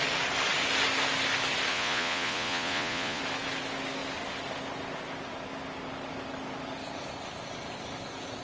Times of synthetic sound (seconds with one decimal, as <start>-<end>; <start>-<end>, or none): 1.7-3.2